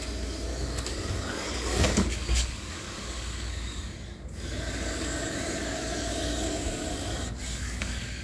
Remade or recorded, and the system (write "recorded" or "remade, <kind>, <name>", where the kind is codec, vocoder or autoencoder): remade, codec, DAC